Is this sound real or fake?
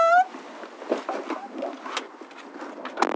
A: real